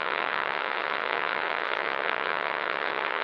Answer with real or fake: fake